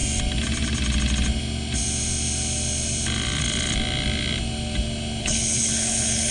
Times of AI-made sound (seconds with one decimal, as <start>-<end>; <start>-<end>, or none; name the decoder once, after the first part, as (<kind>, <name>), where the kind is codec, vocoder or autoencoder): 5.2-6.3 (codec, HILCodec)